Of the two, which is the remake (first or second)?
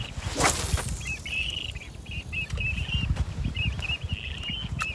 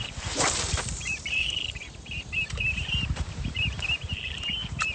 second